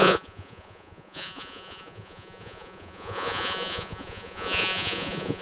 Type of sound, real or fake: fake